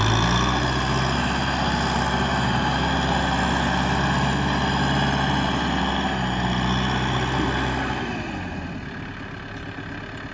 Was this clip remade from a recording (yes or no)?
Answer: no